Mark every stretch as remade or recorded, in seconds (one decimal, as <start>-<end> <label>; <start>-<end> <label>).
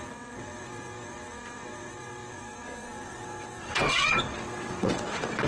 0.0-5.5 remade